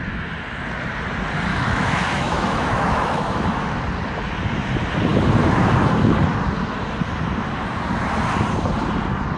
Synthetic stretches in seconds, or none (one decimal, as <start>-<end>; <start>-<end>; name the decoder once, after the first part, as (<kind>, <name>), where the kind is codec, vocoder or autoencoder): 1.5-3.8 (autoencoder, DAC-VAE)